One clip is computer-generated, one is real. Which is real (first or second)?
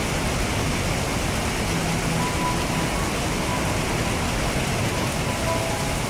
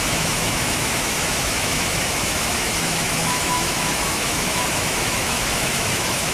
first